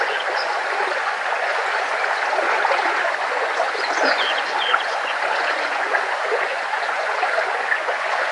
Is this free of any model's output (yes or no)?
no